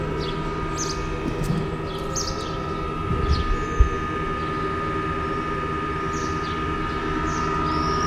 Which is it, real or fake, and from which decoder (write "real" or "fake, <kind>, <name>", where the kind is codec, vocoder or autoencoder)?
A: real